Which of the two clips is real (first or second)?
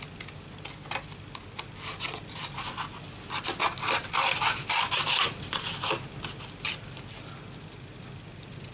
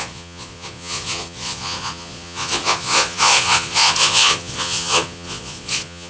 first